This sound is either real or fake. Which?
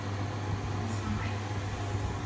real